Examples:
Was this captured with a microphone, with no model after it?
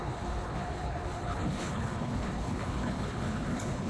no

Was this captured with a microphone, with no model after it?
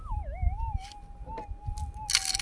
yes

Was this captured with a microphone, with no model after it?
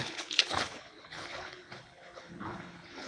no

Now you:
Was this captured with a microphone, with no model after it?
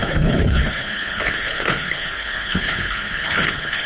no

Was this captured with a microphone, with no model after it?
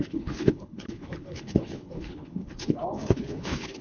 no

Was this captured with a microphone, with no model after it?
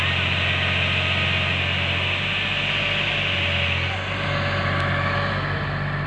yes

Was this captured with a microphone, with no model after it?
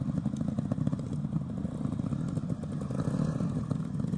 yes